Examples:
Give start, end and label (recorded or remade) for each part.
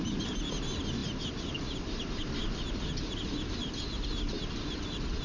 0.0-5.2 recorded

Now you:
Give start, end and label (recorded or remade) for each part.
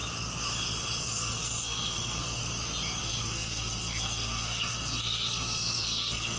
0.0-1.0 recorded; 1.0-2.4 remade; 2.4-3.0 recorded; 3.0-6.4 remade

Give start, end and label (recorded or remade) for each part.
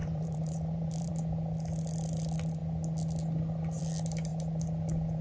0.0-1.1 remade; 1.1-5.2 recorded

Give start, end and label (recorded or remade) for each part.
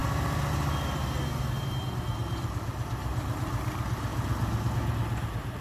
0.0-5.6 recorded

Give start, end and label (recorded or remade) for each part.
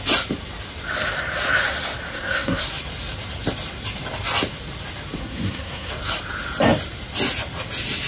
0.0-2.1 recorded; 2.1-2.6 remade; 2.6-5.2 recorded; 5.2-5.9 remade; 5.9-8.1 recorded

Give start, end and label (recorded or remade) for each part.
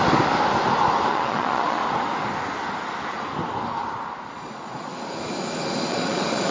0.0-1.1 recorded; 1.1-1.8 remade; 1.8-4.4 recorded; 4.4-4.9 remade; 4.9-5.9 recorded; 5.9-6.5 remade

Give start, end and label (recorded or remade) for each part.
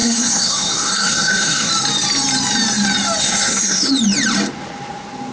0.0-1.7 remade; 1.7-3.2 recorded; 3.2-3.9 remade; 3.9-5.3 recorded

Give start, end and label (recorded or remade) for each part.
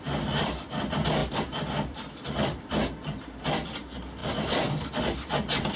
0.0-1.2 recorded; 1.2-2.6 remade; 2.6-4.2 recorded; 4.2-5.0 remade; 5.0-5.8 recorded